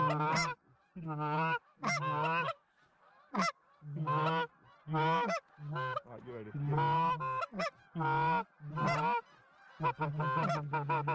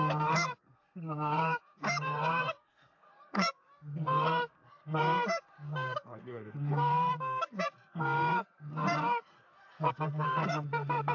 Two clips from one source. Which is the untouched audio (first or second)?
first